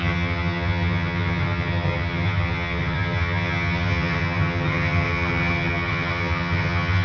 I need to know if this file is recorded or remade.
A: remade